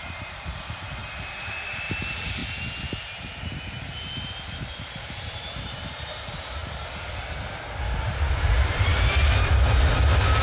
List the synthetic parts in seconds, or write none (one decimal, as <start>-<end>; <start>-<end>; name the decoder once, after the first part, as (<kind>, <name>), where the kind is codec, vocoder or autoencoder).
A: 0.0-1.0 (vocoder, BigVGAN v2); 1.5-2.4; 4.8-6.6; 8.0-10.4